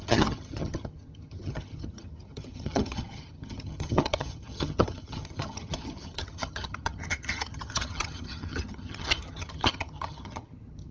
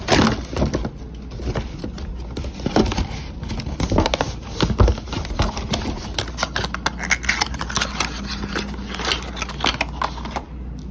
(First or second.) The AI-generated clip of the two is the first